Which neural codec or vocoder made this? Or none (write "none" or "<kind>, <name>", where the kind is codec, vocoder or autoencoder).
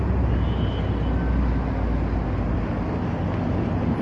none